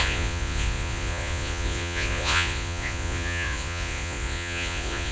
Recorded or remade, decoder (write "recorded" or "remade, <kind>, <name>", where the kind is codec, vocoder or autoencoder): remade, vocoder, Vocos